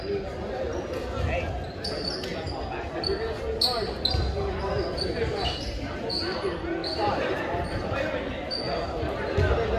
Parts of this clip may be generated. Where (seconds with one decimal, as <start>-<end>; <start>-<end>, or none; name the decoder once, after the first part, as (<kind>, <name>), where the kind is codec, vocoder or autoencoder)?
none